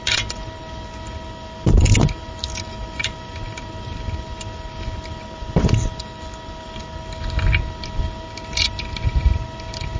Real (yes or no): yes